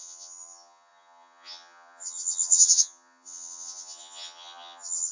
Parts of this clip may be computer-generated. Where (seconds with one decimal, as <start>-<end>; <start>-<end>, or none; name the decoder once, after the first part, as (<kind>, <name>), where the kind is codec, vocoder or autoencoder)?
0.0-5.1 (vocoder, HiFi-GAN)